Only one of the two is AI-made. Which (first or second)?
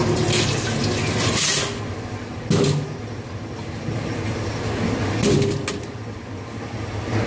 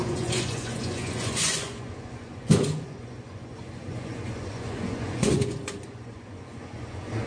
second